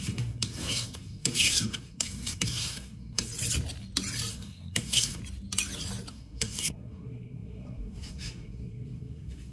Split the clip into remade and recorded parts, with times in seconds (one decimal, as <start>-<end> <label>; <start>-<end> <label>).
0.0-3.3 remade; 3.3-4.3 recorded; 4.3-5.2 remade; 5.2-6.1 recorded; 6.1-9.5 remade